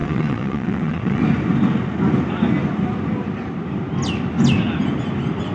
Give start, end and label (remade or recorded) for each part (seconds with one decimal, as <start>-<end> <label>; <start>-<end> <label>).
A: 0.0-1.2 remade; 1.2-5.5 recorded